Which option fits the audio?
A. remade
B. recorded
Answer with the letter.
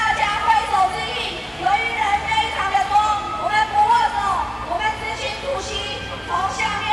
B